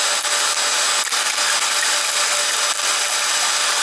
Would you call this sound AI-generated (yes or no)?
no